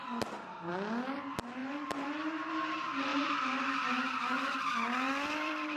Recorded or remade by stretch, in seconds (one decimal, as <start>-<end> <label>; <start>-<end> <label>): 0.0-0.7 recorded; 0.7-1.2 remade; 1.2-3.1 recorded; 3.1-5.8 remade